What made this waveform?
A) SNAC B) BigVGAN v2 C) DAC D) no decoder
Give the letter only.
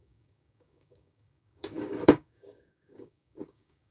C